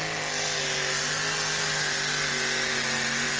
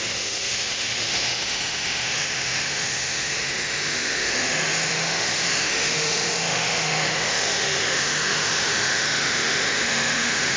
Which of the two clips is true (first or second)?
first